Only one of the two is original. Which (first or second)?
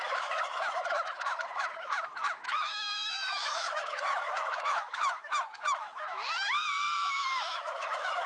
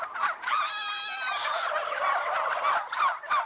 second